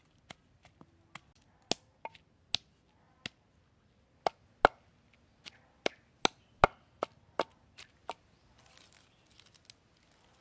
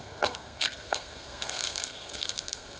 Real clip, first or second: first